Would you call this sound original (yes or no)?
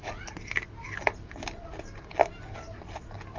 yes